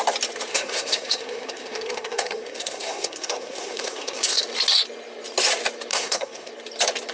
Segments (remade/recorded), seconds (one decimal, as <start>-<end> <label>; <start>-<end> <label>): 0.0-0.5 recorded; 0.5-4.4 remade; 4.4-5.9 recorded; 5.9-6.5 remade; 6.5-7.1 recorded